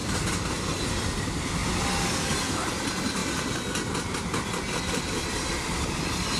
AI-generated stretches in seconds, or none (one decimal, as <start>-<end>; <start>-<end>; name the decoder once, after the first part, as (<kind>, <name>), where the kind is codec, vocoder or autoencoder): none